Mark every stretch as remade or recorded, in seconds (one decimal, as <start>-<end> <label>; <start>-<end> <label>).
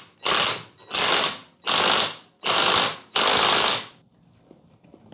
0.0-5.1 recorded